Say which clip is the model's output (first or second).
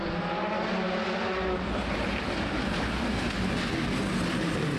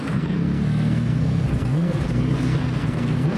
second